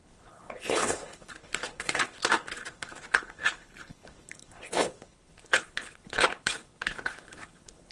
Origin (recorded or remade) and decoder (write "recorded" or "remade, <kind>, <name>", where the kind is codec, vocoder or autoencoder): remade, codec, HILCodec